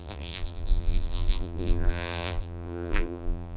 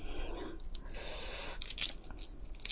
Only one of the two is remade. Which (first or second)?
first